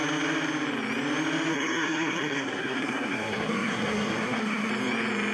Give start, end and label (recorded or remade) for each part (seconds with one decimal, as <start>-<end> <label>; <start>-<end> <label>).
0.0-1.5 recorded; 1.5-4.7 remade; 4.7-5.3 recorded